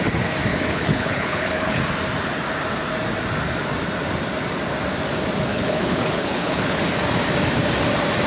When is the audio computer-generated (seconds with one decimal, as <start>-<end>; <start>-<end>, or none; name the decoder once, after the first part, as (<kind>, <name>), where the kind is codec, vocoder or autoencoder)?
0.5-1.8 (codec, HILCodec); 5.5-6.8